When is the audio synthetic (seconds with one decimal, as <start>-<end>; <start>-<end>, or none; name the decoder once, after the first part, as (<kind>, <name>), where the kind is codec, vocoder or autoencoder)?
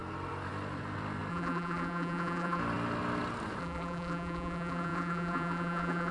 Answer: 1.3-2.6 (vocoder, BigVGAN v2); 3.6-6.1